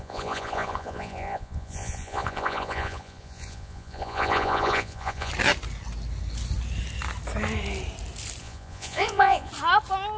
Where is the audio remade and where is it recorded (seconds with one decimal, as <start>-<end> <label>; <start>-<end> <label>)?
0.0-5.3 remade; 5.3-8.4 recorded; 8.4-9.5 remade; 9.5-10.2 recorded